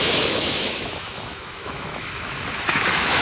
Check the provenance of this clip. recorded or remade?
remade